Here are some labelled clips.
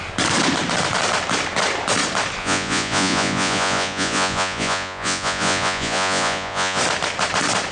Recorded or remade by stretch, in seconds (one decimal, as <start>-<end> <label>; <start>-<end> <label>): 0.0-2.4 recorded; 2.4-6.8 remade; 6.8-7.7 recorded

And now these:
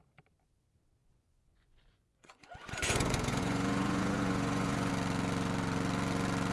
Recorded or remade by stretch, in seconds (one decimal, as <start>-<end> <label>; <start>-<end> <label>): 0.0-1.0 recorded; 1.0-4.9 remade; 4.9-6.5 recorded

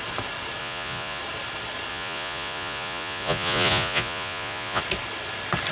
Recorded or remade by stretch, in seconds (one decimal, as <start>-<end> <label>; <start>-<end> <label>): 0.0-0.6 recorded; 0.6-1.2 remade; 1.2-1.9 recorded; 1.9-4.8 remade; 4.8-5.7 recorded